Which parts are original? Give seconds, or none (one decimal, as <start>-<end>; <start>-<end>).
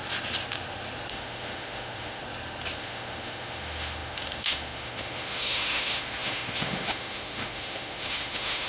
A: 0.0-1.1; 2.2-2.8